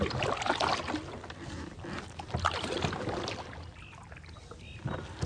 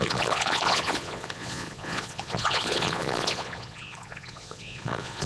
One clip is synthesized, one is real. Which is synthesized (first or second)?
second